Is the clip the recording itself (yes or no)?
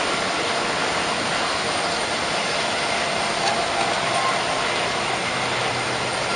yes